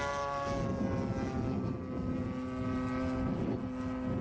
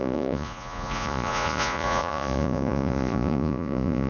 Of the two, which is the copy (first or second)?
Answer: second